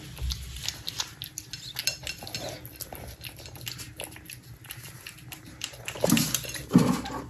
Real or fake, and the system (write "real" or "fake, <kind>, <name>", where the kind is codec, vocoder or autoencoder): real